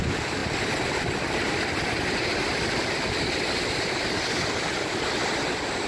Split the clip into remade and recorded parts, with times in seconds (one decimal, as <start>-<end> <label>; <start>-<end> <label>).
0.0-5.9 recorded